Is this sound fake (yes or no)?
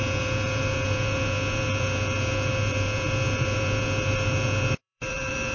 yes